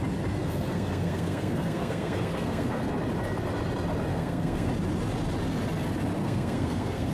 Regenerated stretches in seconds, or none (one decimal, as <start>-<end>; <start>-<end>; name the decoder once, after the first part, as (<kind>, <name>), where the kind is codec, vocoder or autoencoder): 0.4-2.8 (codec, SNAC); 4.1-4.7; 6.2-7.1